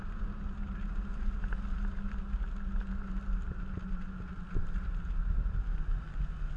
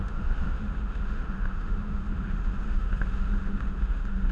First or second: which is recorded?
first